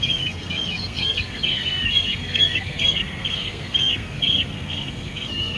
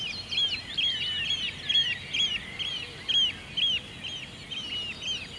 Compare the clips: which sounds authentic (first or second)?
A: second